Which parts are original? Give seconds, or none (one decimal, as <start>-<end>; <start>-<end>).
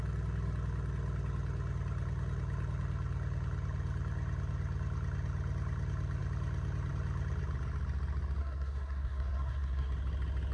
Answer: 0.0-8.4; 9.9-10.5